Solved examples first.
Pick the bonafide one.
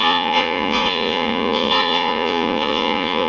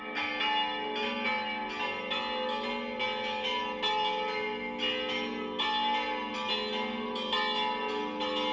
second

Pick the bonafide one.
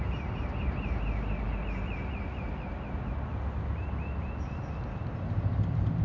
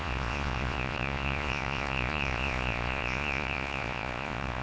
first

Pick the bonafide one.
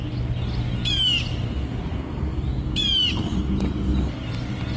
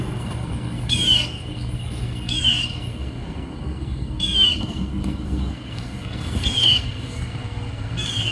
first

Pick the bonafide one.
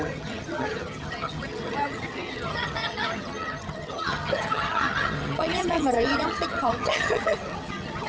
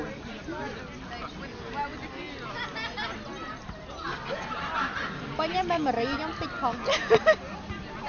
second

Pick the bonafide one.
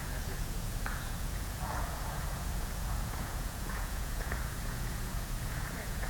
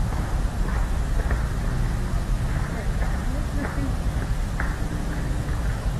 second